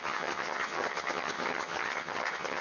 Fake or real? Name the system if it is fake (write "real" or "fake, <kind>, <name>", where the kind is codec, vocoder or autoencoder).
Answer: fake, vocoder, HiFi-GAN